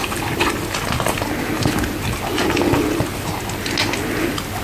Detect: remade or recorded recorded